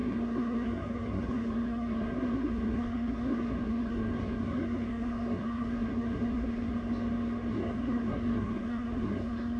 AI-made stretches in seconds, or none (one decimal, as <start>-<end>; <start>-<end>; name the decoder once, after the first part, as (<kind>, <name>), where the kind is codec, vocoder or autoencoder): 0.0-6.7 (codec, SNAC); 7.5-9.6